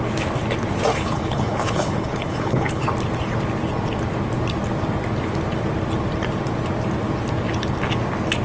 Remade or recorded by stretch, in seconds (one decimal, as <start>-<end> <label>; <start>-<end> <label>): 0.0-0.9 recorded; 0.9-2.8 remade; 2.8-8.4 recorded